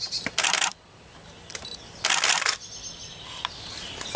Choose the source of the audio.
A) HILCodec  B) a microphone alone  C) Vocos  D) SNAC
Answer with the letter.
B